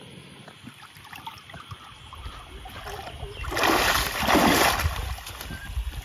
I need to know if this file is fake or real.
real